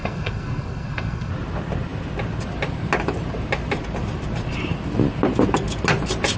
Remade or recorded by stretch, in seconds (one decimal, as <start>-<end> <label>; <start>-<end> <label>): 0.0-1.3 remade; 1.3-6.4 recorded